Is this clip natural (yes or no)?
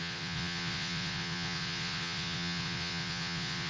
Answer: no